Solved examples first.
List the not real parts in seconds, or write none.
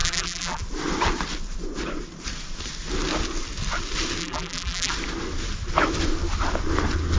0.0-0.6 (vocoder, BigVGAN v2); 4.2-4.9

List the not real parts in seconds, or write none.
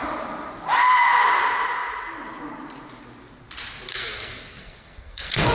3.9-5.5 (codec, SNAC)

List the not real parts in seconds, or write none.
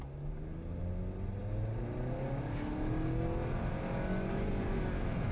none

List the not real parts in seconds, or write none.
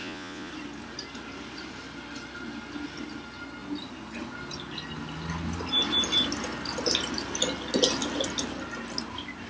0.0-0.5 (vocoder, Vocos)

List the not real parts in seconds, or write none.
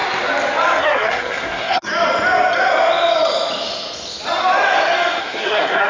0.8-1.9 (codec, SNAC); 5.2-5.9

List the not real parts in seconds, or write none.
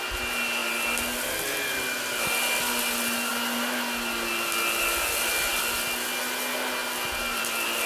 none